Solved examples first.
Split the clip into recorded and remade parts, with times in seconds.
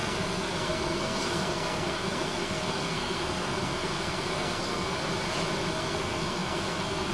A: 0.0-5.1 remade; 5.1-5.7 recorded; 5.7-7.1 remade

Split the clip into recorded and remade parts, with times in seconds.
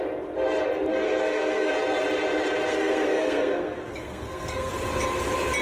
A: 0.0-0.9 recorded; 0.9-1.7 remade; 1.7-2.7 recorded; 2.7-4.7 remade; 4.7-5.6 recorded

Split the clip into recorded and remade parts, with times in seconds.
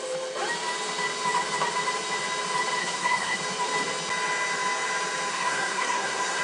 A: 0.0-2.8 recorded; 2.8-3.4 remade; 3.4-5.3 recorded; 5.3-6.4 remade